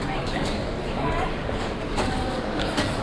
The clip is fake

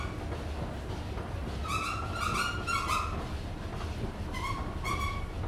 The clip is real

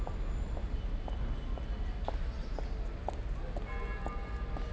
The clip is real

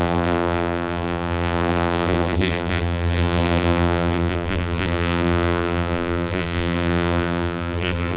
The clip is fake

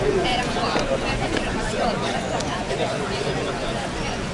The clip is fake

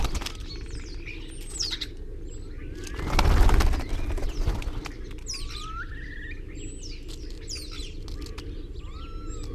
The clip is real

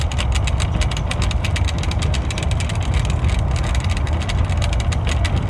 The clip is real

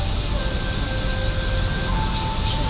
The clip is real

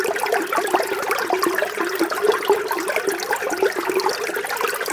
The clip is real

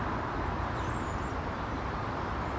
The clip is real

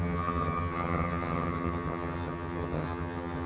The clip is fake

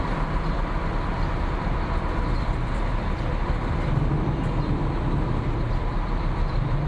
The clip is real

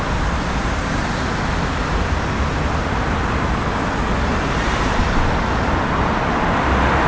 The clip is real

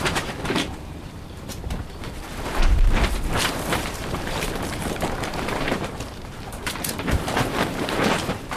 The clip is fake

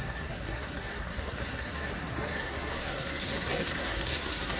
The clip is fake